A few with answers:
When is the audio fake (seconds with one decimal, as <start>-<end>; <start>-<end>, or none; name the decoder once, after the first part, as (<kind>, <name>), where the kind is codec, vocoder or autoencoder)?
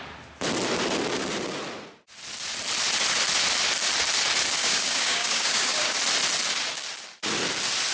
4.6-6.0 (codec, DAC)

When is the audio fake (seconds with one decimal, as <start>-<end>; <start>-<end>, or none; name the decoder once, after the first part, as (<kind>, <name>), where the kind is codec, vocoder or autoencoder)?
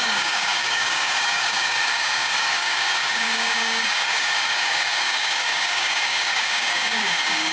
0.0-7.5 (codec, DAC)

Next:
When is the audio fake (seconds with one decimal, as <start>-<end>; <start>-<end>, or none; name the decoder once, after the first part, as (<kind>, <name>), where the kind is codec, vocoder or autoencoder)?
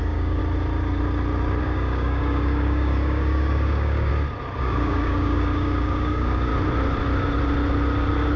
0.0-0.4 (codec, DAC); 1.6-4.1; 4.6-6.5